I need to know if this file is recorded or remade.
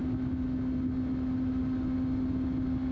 recorded